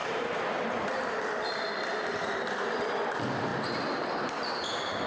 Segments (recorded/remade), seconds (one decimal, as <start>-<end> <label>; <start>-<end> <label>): 0.0-1.3 remade; 1.3-5.1 recorded